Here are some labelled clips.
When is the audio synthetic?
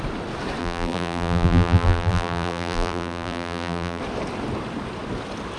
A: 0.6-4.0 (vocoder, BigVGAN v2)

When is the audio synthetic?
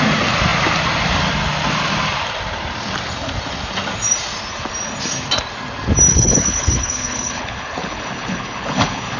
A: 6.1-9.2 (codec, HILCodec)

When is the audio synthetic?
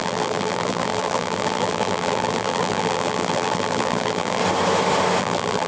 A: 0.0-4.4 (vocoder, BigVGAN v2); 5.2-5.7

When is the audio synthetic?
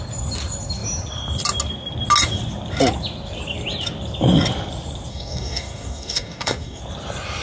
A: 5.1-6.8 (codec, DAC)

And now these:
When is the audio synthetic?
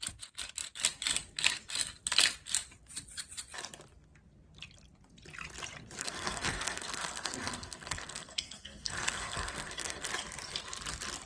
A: 6.0-10.1 (codec, SNAC)